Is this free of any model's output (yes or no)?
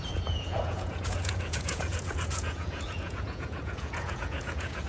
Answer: no